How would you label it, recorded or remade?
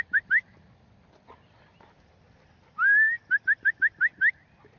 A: recorded